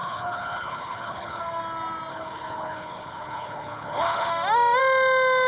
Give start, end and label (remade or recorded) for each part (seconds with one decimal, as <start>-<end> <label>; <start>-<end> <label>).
0.0-1.4 remade; 1.4-2.1 recorded; 2.1-4.3 remade; 4.3-5.5 recorded